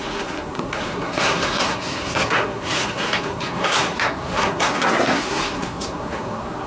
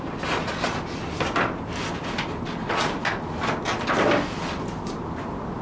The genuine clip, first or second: second